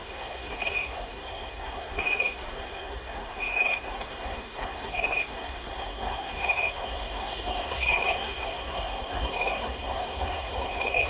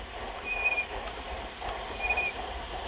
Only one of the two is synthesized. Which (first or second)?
first